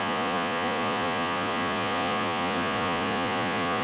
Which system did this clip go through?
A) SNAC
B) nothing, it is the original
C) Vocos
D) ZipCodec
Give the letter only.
C